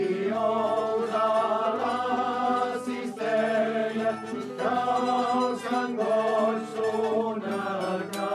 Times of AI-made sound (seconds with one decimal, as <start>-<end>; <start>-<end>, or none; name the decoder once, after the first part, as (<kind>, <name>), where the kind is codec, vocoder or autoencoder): 3.8-4.5 (vocoder, BigVGAN v2); 6.7-7.5

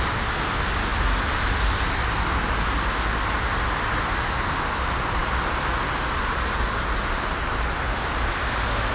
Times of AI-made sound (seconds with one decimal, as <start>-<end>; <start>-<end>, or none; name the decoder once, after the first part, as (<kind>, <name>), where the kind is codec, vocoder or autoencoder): none

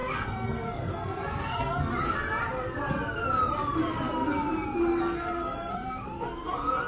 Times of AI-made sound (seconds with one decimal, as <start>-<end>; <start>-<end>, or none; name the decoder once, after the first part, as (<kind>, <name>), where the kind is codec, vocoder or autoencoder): 0.0-1.9 (codec, SNAC); 5.0-6.9

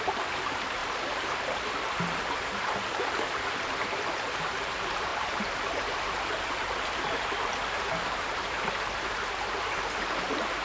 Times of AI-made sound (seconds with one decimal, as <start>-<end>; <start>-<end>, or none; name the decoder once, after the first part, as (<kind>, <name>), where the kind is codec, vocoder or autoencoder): 0.0-10.6 (vocoder, BigVGAN v2)

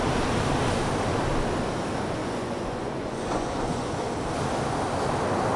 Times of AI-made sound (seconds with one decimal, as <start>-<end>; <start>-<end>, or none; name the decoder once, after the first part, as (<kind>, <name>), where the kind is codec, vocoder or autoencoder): 2.2-4.1 (vocoder, Vocos)